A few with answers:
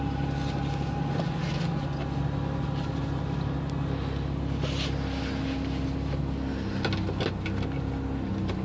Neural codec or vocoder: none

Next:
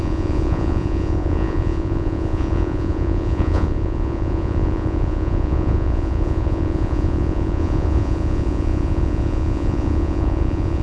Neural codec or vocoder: vocoder, Vocos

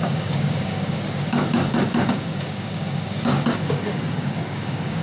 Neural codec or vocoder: codec, DAC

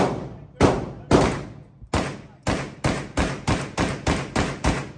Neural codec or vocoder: none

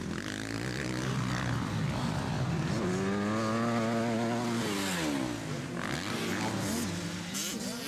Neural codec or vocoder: none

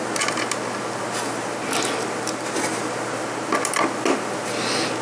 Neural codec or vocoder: none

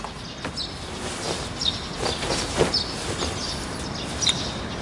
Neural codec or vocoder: none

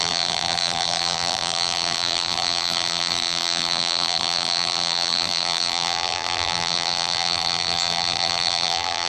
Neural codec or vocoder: vocoder, BigVGAN v2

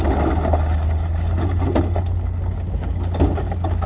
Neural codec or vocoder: none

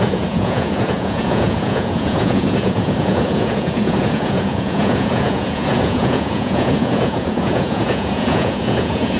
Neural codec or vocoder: vocoder, Vocos